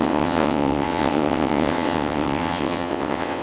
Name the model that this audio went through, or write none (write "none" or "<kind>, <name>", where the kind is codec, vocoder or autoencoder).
vocoder, WaveNeXt